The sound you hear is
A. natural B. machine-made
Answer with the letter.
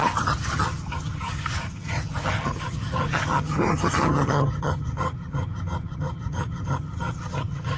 B